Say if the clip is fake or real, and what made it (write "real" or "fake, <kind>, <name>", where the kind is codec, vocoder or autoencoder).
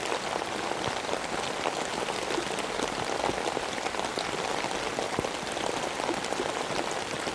real